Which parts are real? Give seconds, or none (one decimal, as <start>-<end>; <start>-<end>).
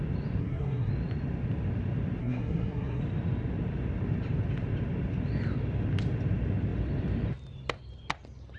0.0-0.4; 0.9-2.2; 3.0-8.6